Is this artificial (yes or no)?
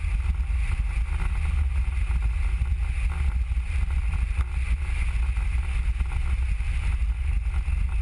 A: no